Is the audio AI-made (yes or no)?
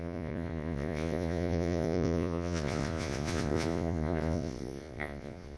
yes